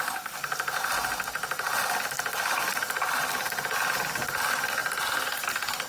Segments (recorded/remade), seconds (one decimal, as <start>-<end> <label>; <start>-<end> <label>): 0.0-5.9 recorded